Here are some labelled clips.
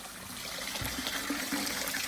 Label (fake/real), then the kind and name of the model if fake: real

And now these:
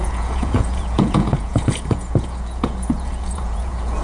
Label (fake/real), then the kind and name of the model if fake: fake, vocoder, Vocos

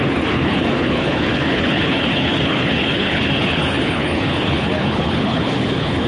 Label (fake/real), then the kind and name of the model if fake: fake, codec, HILCodec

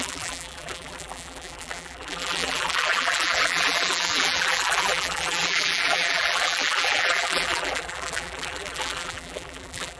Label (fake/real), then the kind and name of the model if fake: fake, vocoder, BigVGAN v2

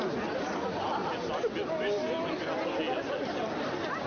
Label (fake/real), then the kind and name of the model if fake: real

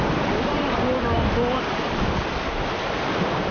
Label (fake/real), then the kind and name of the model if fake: real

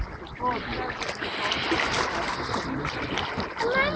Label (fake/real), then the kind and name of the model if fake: real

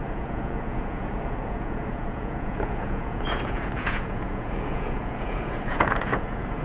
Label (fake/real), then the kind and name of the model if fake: fake, vocoder, Vocos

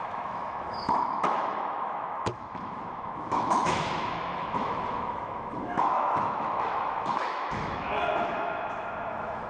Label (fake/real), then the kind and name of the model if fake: fake, autoencoder, DAC-VAE